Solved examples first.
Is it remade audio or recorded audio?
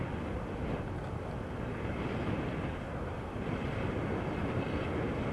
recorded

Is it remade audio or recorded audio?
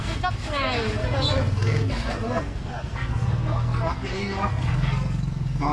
remade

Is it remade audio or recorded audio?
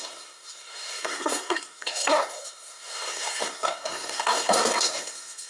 remade